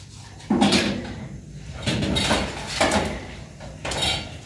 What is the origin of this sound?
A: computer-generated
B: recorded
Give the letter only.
B